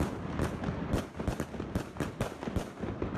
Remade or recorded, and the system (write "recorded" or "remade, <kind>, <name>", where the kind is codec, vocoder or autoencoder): recorded